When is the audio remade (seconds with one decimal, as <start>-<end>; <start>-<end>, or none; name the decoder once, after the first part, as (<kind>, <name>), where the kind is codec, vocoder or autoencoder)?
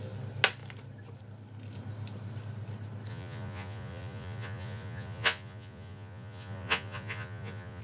3.1-7.8 (vocoder, Vocos)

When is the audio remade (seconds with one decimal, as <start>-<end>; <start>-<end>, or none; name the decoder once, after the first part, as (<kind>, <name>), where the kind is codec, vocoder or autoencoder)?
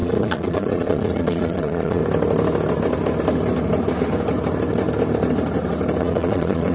0.0-2.0 (vocoder, Vocos); 6.0-6.7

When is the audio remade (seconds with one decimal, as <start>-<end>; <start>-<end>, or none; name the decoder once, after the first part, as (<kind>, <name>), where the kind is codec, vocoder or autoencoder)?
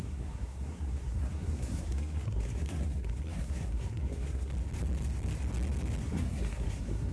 0.0-4.5 (codec, SNAC); 6.0-7.1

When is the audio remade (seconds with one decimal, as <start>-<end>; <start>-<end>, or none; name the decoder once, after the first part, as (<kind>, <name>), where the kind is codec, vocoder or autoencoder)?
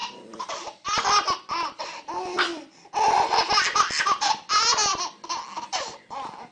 none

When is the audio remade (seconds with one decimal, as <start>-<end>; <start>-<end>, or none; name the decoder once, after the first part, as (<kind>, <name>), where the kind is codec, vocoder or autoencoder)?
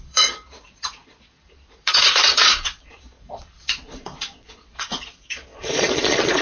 0.0-6.4 (vocoder, Vocos)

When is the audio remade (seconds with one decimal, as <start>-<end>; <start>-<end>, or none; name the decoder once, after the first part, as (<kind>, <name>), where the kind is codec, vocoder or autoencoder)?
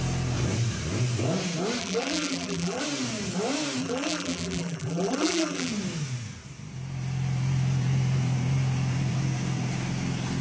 1.8-2.8 (vocoder, BigVGAN v2); 3.8-5.7